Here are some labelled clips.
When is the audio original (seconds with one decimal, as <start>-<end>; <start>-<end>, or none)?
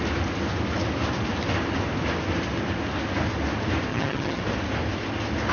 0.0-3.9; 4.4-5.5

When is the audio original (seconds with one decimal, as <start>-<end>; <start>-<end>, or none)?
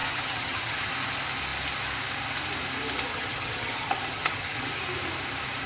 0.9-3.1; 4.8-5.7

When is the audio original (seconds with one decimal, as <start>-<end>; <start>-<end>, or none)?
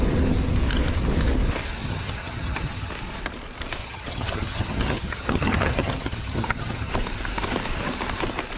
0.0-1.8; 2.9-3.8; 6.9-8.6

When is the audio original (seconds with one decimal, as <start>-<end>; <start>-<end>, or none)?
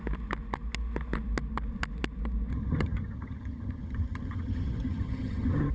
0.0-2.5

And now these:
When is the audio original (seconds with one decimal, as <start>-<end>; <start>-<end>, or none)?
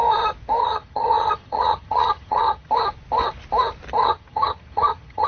0.0-0.6; 2.7-4.0